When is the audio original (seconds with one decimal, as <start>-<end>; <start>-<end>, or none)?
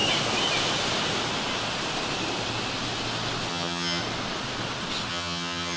0.0-3.5; 4.0-5.1